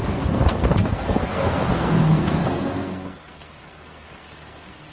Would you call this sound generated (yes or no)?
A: yes